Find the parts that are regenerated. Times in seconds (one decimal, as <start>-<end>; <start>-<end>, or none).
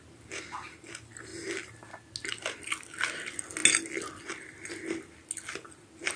none